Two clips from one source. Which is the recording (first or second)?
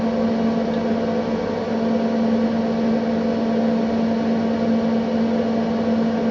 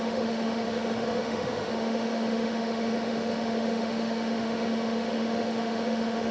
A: first